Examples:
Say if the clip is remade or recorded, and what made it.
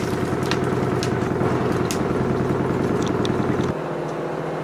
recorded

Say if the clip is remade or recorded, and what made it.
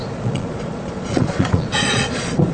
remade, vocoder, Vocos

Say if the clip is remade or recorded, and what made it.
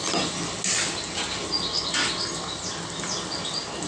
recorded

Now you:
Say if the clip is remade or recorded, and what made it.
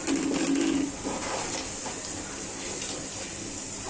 recorded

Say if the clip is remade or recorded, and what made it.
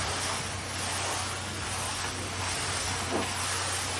recorded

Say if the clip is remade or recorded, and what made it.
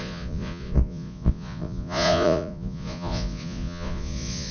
remade, vocoder, Vocos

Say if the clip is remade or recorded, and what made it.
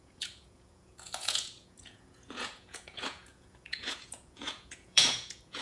remade, vocoder, Vocos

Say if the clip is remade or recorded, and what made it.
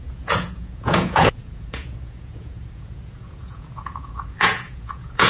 remade, vocoder, Vocos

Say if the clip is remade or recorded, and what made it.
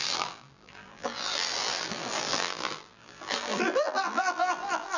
remade, vocoder, BigVGAN v2